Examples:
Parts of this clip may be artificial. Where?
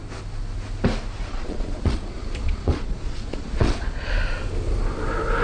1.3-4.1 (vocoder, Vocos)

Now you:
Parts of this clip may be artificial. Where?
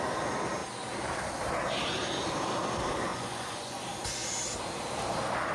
3.1-3.8 (vocoder, Vocos)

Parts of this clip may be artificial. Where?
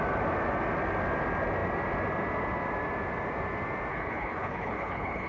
3.9-5.3 (codec, HILCodec)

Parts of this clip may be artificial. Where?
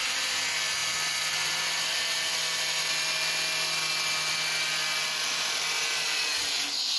none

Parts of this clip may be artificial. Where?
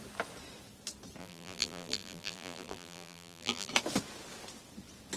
1.2-3.7 (vocoder, BigVGAN v2)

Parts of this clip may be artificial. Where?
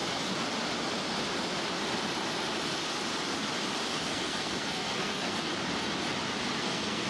3.9-5.5 (codec, SNAC); 6.6-7.1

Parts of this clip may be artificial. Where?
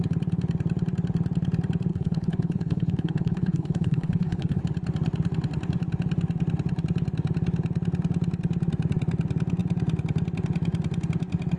1.9-4.6 (codec, HILCodec)